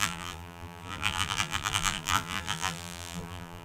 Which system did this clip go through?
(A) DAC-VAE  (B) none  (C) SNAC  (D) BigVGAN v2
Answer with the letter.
D